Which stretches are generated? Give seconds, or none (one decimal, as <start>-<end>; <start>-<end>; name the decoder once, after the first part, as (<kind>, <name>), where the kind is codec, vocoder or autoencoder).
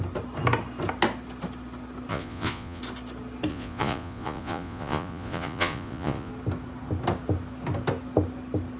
2.1-2.8 (vocoder, Vocos); 3.5-6.3